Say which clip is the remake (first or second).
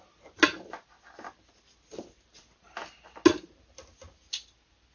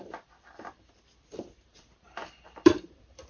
second